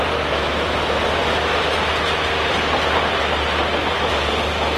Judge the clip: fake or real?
real